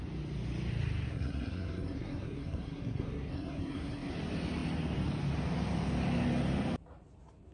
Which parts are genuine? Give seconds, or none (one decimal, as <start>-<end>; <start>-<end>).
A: 0.0-1.1; 4.1-7.5